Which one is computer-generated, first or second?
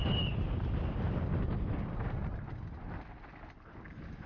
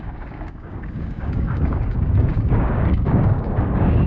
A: second